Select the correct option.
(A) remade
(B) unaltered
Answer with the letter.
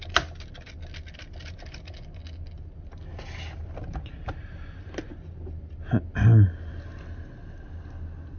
B